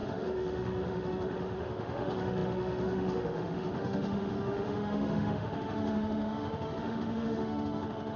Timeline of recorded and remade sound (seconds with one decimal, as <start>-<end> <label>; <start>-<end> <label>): 0.0-8.2 remade